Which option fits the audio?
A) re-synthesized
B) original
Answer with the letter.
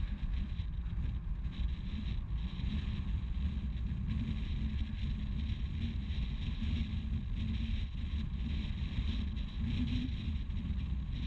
B